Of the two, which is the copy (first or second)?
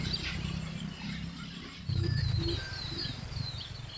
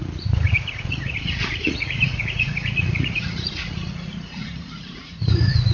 second